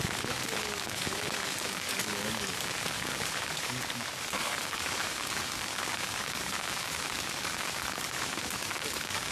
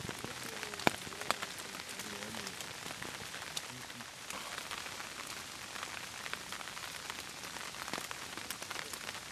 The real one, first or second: second